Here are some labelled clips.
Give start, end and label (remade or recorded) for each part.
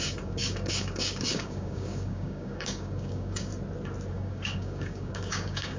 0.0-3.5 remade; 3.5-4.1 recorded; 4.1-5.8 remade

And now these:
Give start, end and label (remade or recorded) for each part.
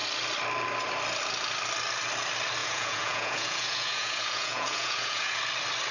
0.0-2.6 recorded; 2.6-5.4 remade; 5.4-5.9 recorded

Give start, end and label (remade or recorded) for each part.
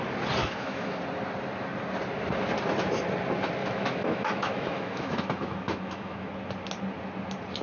0.0-0.4 recorded; 0.4-1.0 remade; 1.0-3.6 recorded; 3.6-6.3 remade; 6.3-7.6 recorded